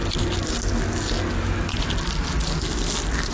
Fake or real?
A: real